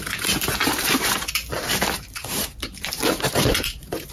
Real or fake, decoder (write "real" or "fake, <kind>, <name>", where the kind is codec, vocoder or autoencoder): fake, vocoder, BigVGAN v2